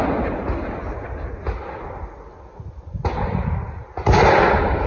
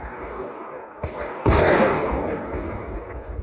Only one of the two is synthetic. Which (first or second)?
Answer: second